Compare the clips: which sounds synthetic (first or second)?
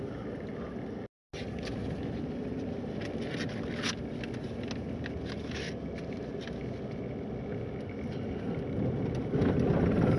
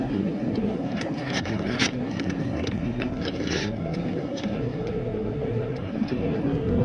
second